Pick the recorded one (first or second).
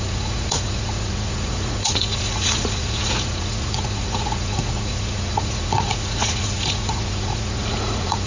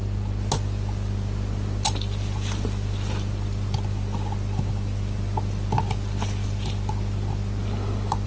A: second